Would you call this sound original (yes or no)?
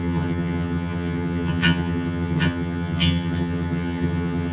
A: no